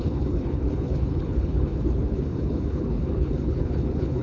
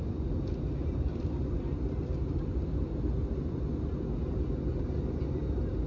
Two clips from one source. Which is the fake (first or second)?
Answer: first